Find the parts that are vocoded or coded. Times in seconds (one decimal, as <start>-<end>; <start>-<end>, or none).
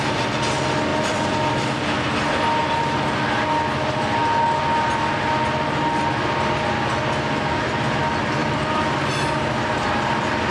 0.9-1.5; 8.4-9.0